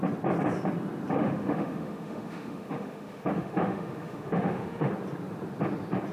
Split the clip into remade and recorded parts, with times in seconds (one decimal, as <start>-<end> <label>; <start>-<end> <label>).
0.0-1.2 recorded; 1.2-4.9 remade; 4.9-6.1 recorded